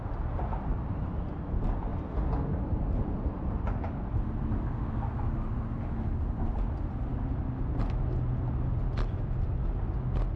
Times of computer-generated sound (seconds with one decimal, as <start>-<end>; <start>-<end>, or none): 0.7-1.3; 1.9-3.9

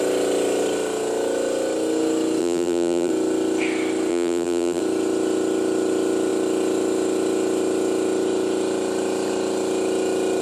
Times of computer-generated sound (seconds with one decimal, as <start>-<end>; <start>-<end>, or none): 2.4-3.1; 4.1-4.8